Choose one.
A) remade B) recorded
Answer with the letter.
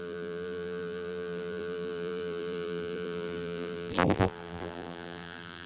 A